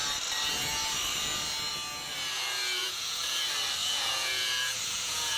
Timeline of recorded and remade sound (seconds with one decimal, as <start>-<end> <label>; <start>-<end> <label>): 0.0-2.8 recorded; 2.8-3.4 remade; 3.4-3.8 recorded; 3.8-5.4 remade